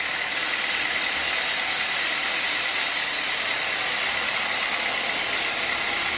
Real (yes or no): yes